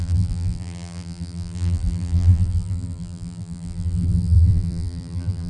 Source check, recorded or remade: remade